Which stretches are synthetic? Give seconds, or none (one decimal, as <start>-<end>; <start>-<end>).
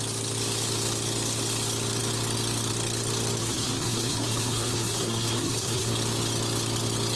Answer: 3.4-5.9